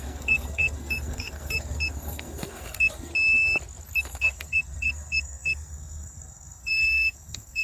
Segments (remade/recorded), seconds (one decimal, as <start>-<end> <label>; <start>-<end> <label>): 0.0-3.1 remade; 3.1-4.0 recorded; 4.0-7.6 remade

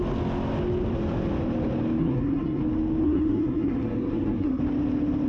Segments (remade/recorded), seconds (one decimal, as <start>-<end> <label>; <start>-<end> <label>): 0.0-2.0 recorded; 2.0-2.6 remade; 2.6-3.0 recorded; 3.0-4.6 remade; 4.6-5.3 recorded

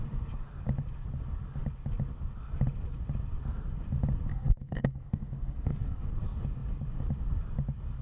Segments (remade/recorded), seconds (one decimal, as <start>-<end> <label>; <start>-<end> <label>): 0.0-4.3 recorded; 4.3-6.0 remade; 6.0-8.0 recorded